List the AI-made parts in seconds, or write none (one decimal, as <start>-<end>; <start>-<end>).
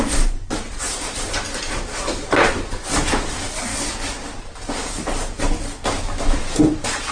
none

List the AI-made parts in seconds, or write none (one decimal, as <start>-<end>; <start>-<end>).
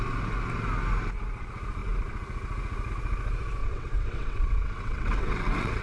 3.6-5.8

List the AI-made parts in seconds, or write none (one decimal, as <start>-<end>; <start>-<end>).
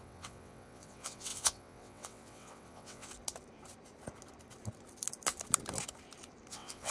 0.0-3.1; 6.5-6.9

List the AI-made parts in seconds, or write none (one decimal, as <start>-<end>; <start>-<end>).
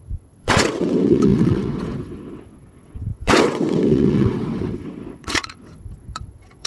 0.0-6.7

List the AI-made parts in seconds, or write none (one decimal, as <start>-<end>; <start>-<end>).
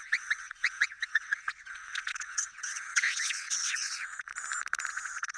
0.0-4.3; 4.9-5.4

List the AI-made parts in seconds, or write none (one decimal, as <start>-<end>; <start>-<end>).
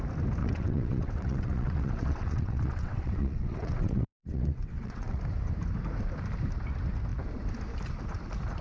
0.4-5.2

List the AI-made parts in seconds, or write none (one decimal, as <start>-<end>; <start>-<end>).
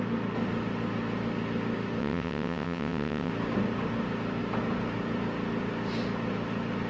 2.0-3.3